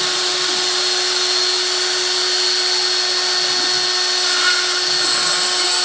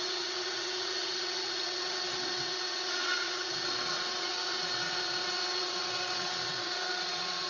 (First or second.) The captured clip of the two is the first